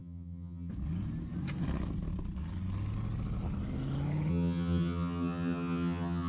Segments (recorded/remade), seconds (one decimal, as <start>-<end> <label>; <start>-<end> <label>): 0.0-0.7 remade; 0.7-4.3 recorded; 4.3-6.3 remade